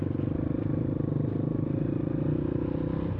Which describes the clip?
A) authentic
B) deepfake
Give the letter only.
A